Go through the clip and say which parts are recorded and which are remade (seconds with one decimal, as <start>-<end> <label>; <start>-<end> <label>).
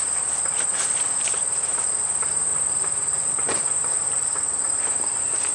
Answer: 0.0-2.5 recorded; 2.5-5.5 remade